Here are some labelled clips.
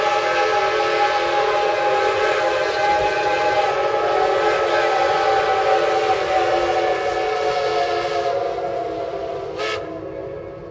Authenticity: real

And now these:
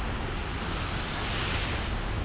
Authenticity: real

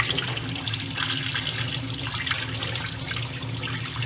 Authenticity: real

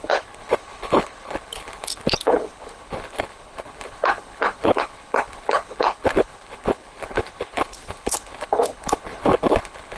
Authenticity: fake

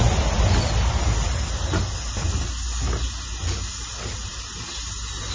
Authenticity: real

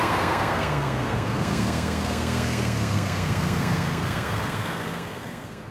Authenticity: fake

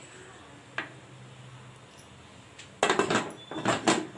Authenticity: real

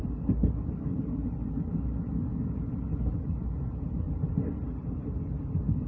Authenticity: real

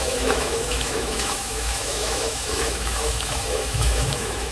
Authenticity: fake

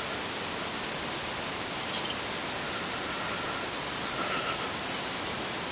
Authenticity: real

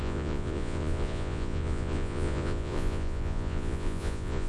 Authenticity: fake